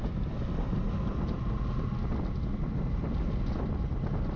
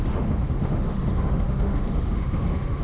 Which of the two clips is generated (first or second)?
second